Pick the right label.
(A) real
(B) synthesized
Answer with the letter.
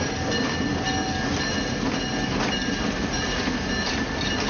A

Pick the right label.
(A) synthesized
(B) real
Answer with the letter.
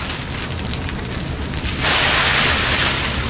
B